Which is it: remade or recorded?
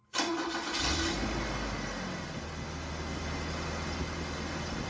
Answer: recorded